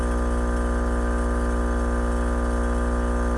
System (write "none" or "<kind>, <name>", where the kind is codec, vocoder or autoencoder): none